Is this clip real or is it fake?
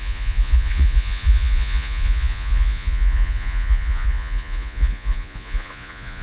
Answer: fake